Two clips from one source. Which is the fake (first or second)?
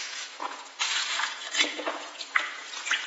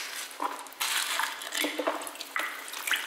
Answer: first